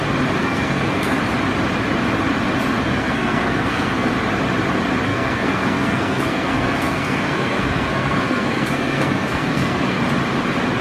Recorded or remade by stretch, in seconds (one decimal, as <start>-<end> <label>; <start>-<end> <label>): 0.0-0.4 recorded; 0.4-1.2 remade; 1.2-2.9 recorded; 2.9-4.1 remade; 4.1-5.1 recorded; 5.1-10.0 remade; 10.0-10.8 recorded

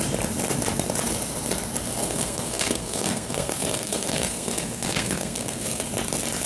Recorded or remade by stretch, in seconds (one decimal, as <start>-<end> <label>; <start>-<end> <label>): 0.0-2.0 recorded; 2.0-5.9 remade; 5.9-6.5 recorded